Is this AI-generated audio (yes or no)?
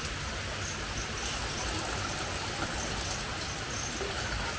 no